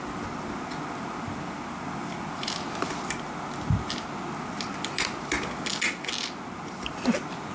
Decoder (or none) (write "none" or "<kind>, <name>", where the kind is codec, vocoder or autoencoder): none